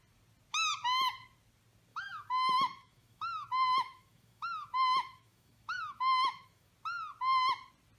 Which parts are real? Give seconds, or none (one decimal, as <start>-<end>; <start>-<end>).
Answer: 0.0-1.9; 6.7-8.0